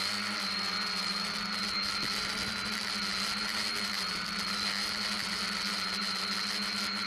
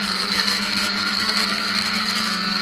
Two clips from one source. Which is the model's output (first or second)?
second